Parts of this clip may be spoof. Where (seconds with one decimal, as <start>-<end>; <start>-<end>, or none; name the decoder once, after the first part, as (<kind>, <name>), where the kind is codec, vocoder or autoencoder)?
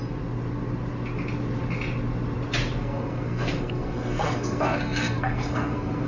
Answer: 2.8-6.1 (codec, SNAC)